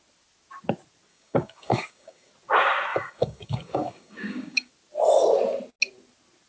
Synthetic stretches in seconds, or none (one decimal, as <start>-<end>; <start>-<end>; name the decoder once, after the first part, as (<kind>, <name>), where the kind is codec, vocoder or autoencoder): 1.1-2.3 (codec, DAC); 2.9-4.7